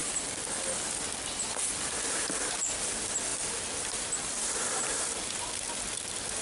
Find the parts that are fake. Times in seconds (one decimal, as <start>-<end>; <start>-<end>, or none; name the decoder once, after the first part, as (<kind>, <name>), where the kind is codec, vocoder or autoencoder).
none